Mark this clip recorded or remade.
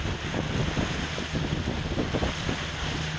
recorded